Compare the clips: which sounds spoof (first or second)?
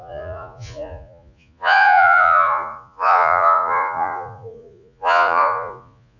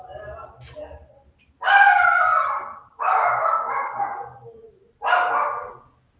first